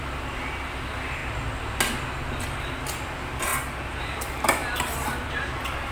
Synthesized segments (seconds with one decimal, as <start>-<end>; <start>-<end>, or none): 0.0-1.2; 2.6-3.5; 4.0-4.6; 5.5-5.9